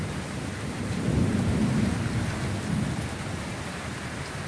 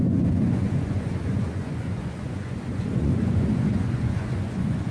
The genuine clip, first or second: first